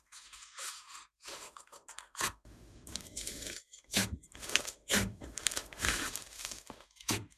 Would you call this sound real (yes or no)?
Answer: no